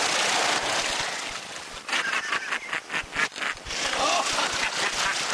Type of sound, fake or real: fake